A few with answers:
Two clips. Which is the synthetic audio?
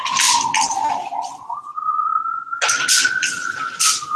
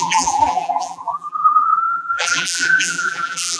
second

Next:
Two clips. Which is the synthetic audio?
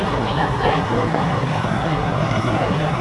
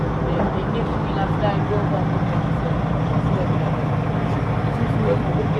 first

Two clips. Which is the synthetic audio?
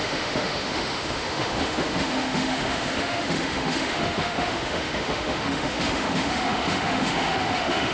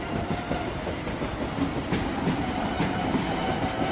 first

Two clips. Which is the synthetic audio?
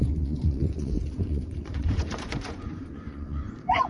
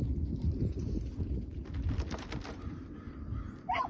first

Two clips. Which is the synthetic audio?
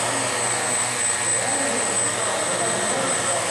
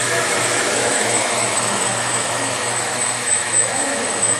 second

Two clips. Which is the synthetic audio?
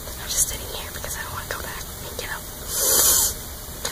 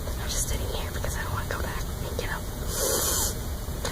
second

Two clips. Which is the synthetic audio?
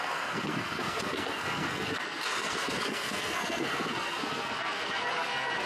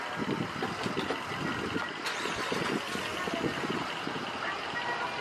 first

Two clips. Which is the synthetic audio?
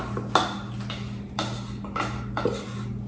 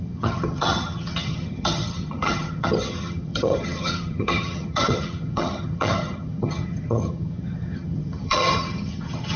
second